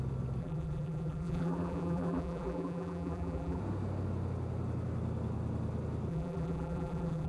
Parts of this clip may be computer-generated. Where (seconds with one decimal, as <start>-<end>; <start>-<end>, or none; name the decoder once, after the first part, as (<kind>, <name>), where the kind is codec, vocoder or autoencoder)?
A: 0.4-3.6 (vocoder, BigVGAN v2); 6.1-7.3